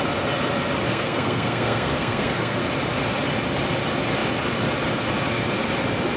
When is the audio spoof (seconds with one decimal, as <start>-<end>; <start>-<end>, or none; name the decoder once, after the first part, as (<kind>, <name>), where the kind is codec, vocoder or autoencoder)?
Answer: 0.9-2.6 (codec, SNAC)